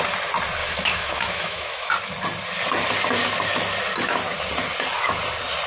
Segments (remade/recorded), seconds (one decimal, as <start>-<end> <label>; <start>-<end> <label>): 0.0-0.6 recorded; 0.6-1.9 remade; 1.9-5.7 recorded